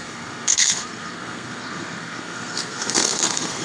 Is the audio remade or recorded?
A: remade